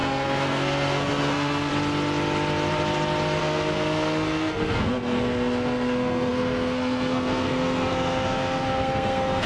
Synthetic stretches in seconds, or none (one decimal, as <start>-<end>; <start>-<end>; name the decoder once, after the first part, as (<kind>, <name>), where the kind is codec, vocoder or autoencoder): 0.0-1.7 (codec, SNAC); 3.4-9.5